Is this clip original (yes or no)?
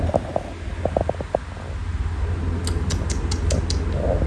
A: yes